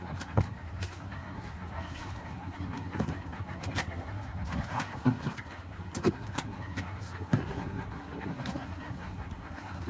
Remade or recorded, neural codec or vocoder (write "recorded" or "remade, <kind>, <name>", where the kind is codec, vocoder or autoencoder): remade, codec, SNAC